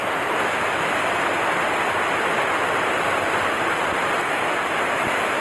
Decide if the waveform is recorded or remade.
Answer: recorded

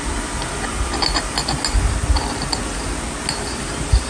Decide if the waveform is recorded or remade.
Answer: recorded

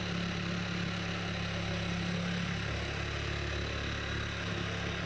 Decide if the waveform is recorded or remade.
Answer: recorded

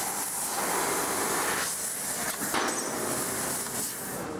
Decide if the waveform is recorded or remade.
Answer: recorded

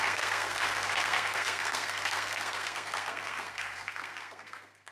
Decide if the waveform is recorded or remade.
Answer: remade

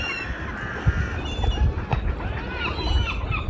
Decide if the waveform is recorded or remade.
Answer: recorded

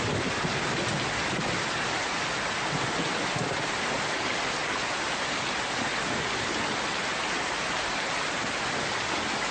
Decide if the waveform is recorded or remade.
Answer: recorded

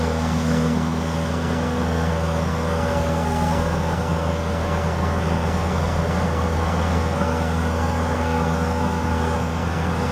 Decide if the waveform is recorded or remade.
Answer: remade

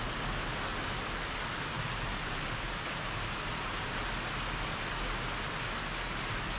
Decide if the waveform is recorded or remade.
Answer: recorded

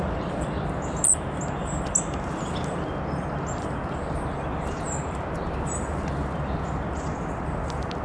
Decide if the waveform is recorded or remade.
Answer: recorded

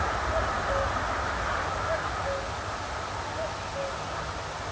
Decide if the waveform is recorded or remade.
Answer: recorded